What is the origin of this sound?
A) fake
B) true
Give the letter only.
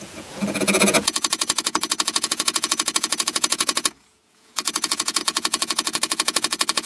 A